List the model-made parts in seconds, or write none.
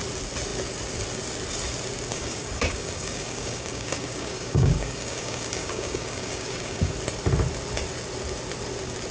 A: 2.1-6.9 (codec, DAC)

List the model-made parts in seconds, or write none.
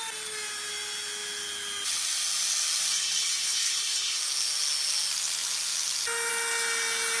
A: 2.9-4.2 (codec, HILCodec)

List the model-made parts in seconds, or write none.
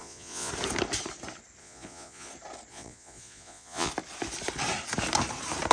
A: 0.0-0.5 (vocoder, Vocos); 1.6-2.3; 2.7-3.9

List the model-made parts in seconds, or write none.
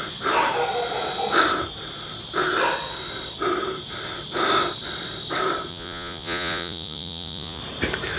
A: 5.7-7.6 (vocoder, Vocos)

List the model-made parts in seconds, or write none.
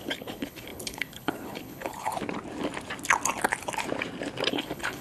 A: 0.0-2.1 (codec, HILCodec); 4.5-5.0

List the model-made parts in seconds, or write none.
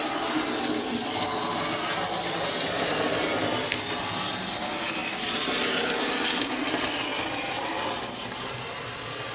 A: 7.1-9.3 (vocoder, BigVGAN v2)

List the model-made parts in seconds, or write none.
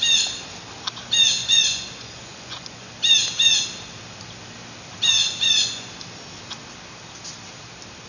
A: 1.4-2.9 (vocoder, Vocos); 5.2-5.9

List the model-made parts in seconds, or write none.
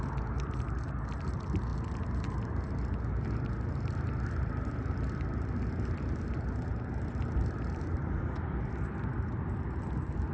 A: none